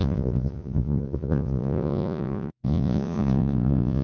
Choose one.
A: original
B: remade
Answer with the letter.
B